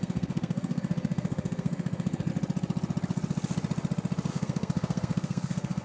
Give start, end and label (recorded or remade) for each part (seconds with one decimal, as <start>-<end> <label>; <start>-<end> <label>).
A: 0.0-2.3 remade; 2.3-4.3 recorded; 4.3-5.8 remade